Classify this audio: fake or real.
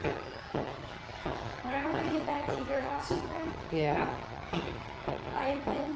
fake